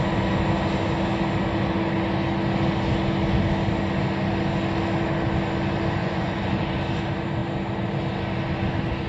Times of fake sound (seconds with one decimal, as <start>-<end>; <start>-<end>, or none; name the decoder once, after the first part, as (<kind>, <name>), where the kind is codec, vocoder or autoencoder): 6.0-6.5 (vocoder, Vocos)